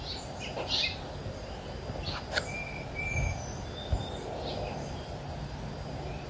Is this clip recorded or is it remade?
recorded